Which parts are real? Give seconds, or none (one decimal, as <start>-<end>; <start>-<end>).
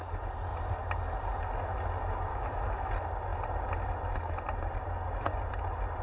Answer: 0.0-2.3; 2.9-6.0